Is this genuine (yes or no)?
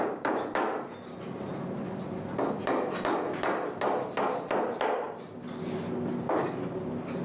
yes